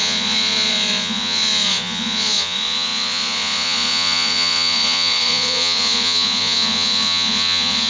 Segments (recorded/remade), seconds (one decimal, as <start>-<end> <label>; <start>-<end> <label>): 0.0-7.9 remade